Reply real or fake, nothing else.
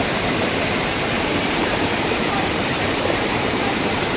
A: fake